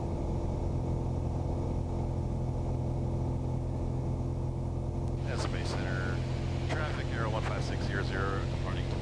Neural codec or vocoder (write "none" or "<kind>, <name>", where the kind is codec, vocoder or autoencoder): none